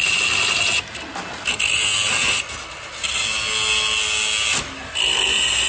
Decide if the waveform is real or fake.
real